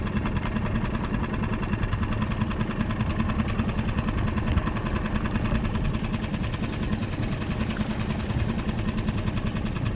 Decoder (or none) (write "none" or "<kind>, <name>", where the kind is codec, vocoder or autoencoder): none